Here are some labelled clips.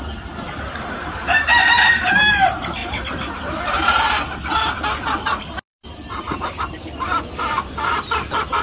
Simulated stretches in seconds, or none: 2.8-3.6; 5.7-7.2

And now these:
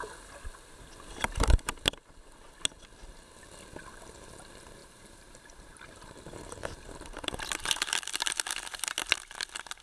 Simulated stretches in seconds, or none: 4.8-8.1

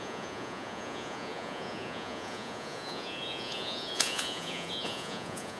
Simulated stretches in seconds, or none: 0.0-5.6

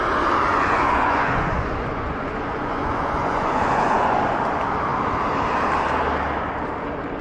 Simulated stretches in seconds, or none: 0.5-4.2

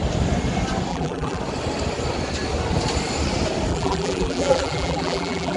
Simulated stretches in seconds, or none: 0.9-1.4; 3.7-5.6

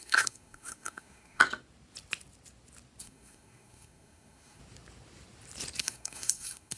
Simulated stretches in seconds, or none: 0.0-1.4; 3.0-4.6; 5.8-6.8

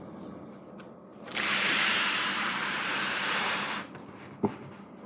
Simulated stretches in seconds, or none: 1.1-3.7

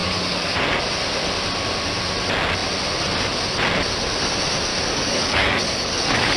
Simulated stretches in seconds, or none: 0.0-0.6; 4.7-6.4